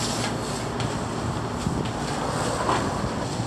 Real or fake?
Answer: real